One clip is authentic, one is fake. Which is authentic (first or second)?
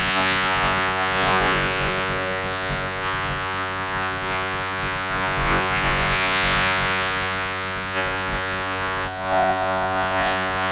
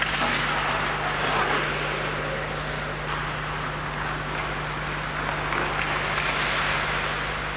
second